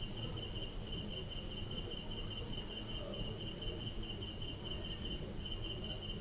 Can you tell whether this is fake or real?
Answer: fake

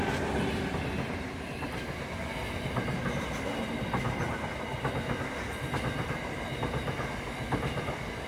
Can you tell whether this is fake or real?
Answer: real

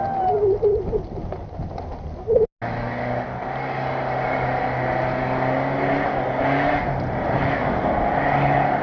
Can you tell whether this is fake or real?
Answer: real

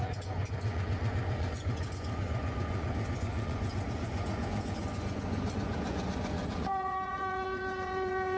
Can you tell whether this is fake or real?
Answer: fake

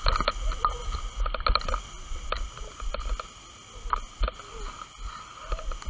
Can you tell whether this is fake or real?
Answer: real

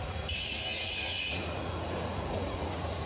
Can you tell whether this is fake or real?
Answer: fake